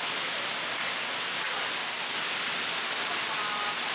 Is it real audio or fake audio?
real